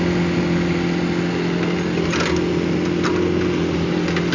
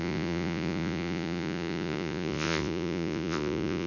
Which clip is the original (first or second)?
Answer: first